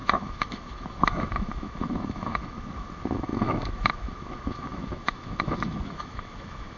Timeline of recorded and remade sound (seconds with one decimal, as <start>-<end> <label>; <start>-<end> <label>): 0.0-6.8 remade